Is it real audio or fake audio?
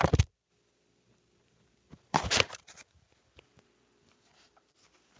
fake